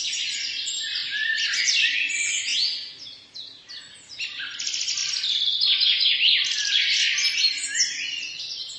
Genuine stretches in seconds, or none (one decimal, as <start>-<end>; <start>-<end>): 0.0-8.8